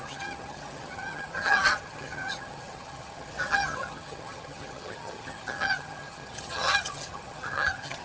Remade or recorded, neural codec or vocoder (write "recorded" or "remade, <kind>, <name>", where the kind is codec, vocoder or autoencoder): remade, vocoder, HiFi-GAN